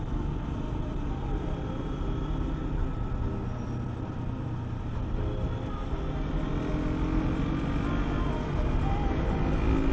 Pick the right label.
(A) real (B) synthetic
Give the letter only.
A